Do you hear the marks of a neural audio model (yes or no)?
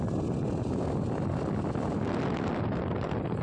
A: no